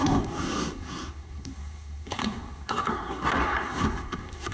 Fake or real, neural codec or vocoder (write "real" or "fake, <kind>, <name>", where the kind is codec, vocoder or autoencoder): fake, codec, SNAC